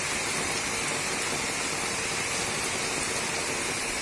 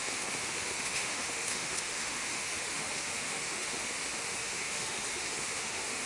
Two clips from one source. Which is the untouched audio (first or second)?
first